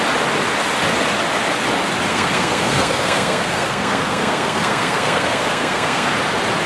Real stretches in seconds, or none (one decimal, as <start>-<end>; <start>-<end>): 0.0-2.1; 6.1-6.7